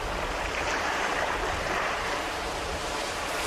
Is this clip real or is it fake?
fake